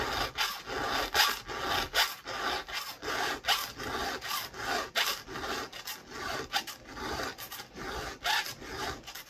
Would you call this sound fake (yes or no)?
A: no